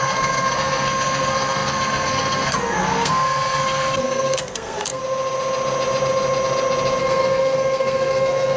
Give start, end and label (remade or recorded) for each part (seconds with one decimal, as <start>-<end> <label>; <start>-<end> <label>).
0.0-5.0 remade; 5.0-7.0 recorded; 7.0-8.6 remade